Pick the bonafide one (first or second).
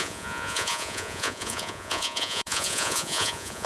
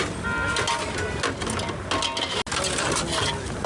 second